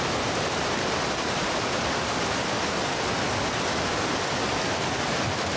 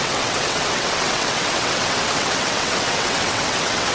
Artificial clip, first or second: second